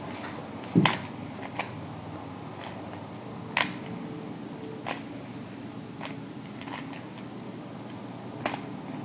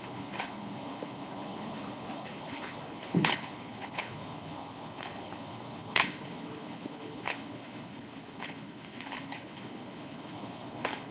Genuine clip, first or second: first